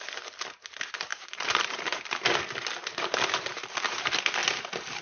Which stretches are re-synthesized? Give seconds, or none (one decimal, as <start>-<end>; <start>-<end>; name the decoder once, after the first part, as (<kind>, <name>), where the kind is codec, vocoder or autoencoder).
1.1-2.4 (vocoder, BigVGAN v2); 2.8-3.7